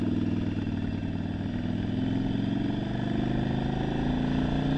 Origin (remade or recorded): recorded